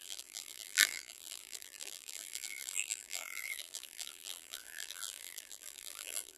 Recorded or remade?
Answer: remade